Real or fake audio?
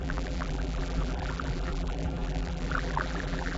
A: fake